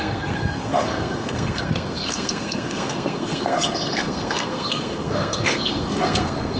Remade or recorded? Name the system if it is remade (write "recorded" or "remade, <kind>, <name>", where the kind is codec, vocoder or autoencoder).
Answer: remade, codec, SNAC